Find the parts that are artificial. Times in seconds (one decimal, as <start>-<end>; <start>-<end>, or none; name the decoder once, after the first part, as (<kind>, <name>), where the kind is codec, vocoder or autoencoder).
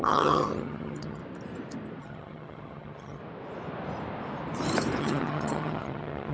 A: 0.0-1.2 (vocoder, HiFi-GAN); 2.0-3.2; 5.0-6.3